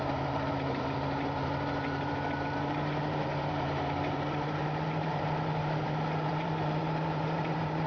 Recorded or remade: remade